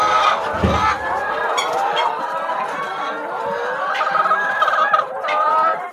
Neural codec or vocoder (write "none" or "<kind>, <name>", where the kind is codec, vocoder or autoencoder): none